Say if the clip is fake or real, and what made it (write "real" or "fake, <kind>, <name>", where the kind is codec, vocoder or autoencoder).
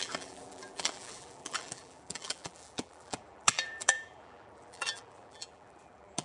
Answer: fake, vocoder, BigVGAN v2